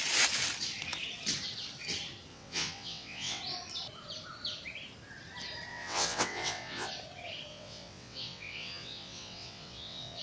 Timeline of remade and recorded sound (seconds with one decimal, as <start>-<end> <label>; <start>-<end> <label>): 0.0-2.3 recorded; 2.3-3.4 remade; 3.4-5.7 recorded; 5.7-6.9 remade; 6.9-7.5 recorded; 7.5-10.2 remade